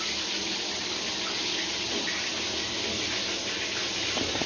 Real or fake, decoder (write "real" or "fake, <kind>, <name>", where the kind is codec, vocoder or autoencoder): real